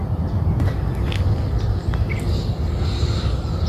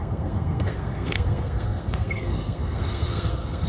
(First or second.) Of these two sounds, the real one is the first